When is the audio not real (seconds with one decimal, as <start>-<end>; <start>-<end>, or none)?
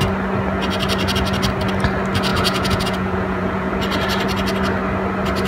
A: 2.3-3.7